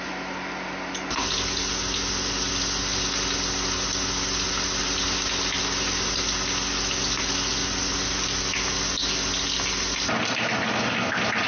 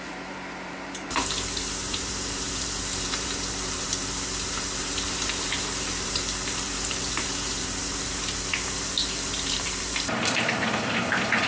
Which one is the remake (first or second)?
second